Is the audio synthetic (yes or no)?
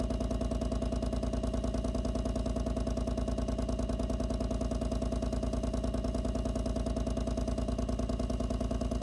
no